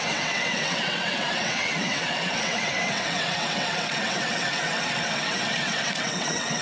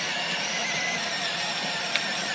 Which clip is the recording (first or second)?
second